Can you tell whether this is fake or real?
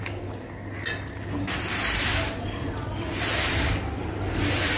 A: real